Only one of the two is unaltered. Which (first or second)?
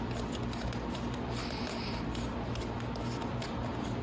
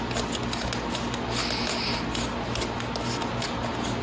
second